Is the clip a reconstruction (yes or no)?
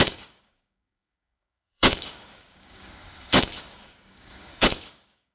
yes